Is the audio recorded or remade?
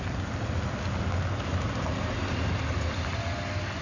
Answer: recorded